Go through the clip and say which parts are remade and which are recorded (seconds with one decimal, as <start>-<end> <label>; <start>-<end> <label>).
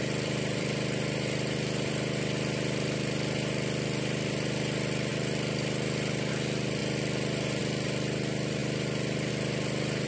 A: 0.0-6.8 remade; 6.8-7.6 recorded; 7.6-10.1 remade